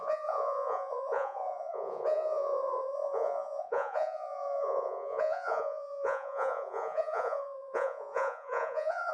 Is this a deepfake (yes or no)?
yes